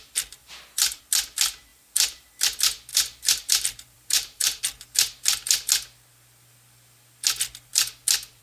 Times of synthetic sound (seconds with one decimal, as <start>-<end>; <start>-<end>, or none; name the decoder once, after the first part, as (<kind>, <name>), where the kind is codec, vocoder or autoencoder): 0.4-1.0 (vocoder, BigVGAN v2); 1.7-2.3; 2.9-4.6